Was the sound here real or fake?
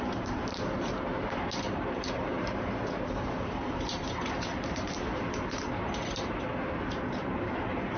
fake